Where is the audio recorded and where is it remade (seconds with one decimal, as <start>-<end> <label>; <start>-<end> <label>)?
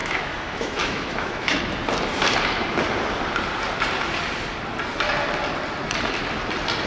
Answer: 0.0-1.6 remade; 1.6-6.9 recorded